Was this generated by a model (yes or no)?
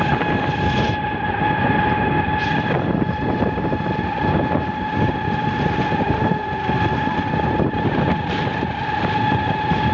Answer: no